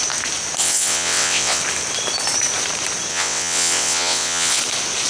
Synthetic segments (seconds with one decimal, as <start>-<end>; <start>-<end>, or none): 0.6-1.6; 3.1-4.6